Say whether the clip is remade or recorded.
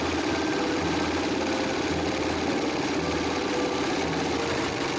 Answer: recorded